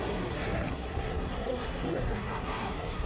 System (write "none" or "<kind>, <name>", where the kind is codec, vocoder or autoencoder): codec, SNAC